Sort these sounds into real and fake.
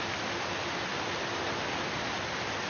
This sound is real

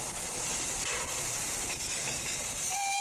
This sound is real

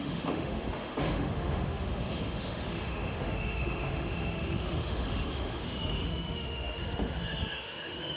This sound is fake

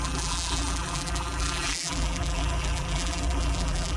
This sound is fake